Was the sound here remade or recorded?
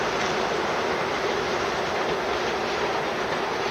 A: recorded